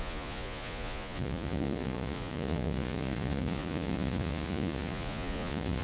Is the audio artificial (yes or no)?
yes